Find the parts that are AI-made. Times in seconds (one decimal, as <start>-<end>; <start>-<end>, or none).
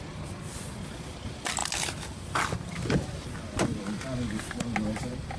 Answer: none